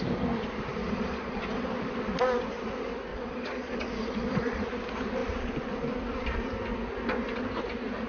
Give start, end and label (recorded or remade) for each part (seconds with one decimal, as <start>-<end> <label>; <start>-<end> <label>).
0.0-0.8 recorded; 0.8-1.7 remade; 1.7-3.1 recorded; 3.1-4.6 remade; 4.6-8.1 recorded